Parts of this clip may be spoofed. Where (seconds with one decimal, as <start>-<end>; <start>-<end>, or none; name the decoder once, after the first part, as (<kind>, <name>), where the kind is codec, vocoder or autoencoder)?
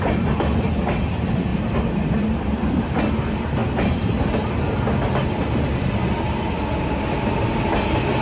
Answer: 1.5-3.0 (vocoder, BigVGAN v2)